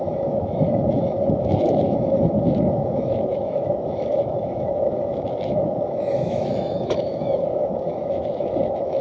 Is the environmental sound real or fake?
fake